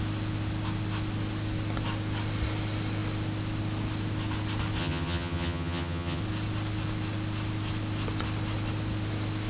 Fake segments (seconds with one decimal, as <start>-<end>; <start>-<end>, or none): 4.8-6.2